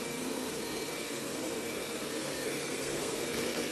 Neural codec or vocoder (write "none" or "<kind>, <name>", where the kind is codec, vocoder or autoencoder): codec, SNAC